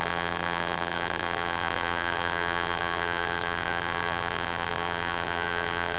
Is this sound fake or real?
fake